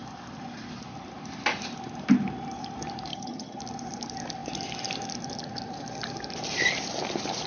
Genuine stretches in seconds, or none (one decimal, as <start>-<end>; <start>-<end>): 0.0-3.1; 3.6-7.5